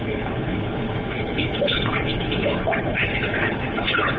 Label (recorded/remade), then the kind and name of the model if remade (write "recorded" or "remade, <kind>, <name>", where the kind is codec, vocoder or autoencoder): remade, codec, HILCodec